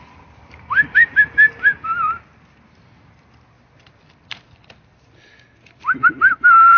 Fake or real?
fake